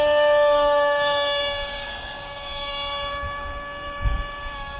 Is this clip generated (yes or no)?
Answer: yes